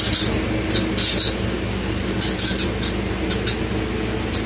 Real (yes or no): yes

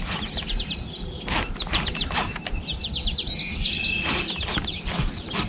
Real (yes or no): yes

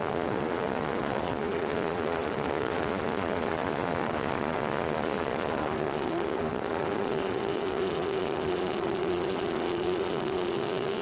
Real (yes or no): no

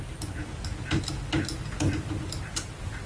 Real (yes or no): yes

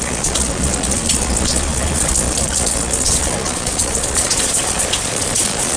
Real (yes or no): no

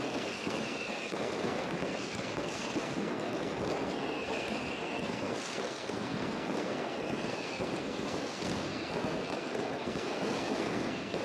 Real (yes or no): no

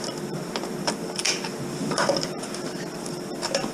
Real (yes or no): no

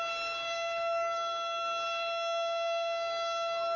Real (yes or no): no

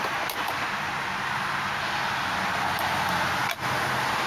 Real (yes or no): yes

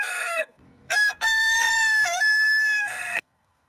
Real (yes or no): no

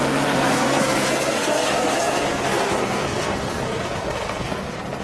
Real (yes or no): no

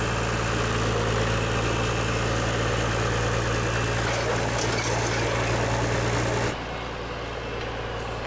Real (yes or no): yes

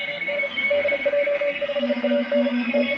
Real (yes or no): no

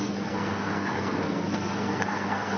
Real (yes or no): no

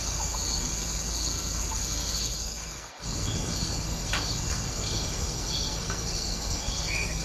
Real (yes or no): no